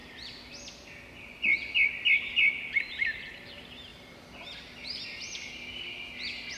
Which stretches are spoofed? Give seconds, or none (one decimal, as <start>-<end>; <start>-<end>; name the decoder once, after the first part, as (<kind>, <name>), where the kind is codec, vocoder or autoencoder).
none